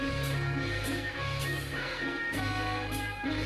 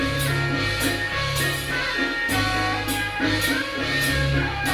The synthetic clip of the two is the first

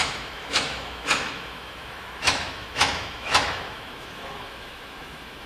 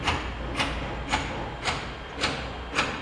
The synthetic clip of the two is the first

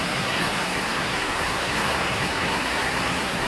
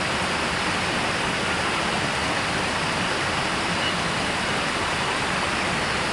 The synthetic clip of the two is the first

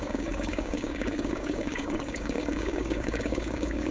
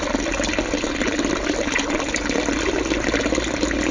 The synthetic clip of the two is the first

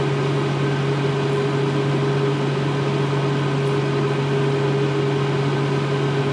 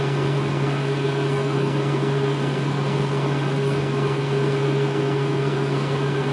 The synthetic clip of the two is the second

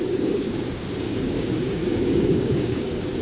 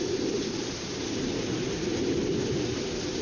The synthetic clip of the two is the first